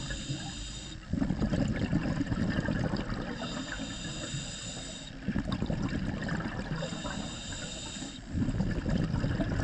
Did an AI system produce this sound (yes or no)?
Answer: no